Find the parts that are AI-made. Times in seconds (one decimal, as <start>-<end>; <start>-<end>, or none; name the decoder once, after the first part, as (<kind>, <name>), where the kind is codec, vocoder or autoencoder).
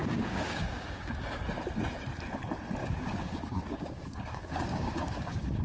0.0-1.4 (codec, DAC); 2.8-5.6